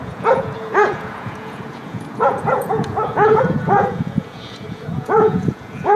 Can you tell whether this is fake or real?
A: fake